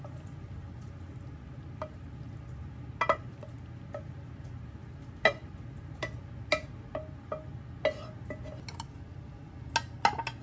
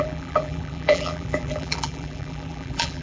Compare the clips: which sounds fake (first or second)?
second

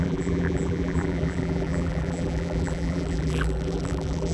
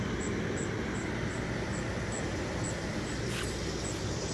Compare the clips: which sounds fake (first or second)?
first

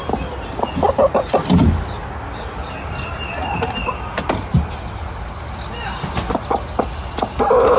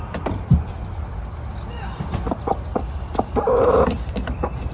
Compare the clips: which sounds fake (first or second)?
second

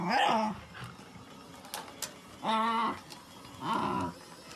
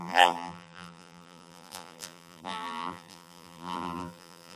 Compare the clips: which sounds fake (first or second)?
second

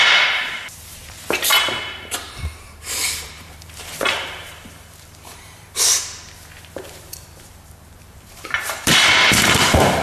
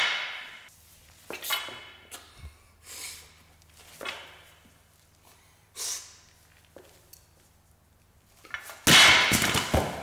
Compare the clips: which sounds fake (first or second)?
first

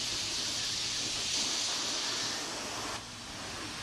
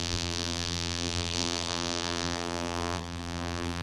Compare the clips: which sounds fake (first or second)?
second